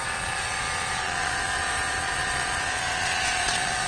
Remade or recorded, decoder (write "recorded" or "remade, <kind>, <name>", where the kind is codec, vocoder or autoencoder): remade, vocoder, Vocos